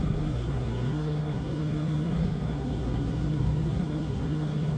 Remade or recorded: remade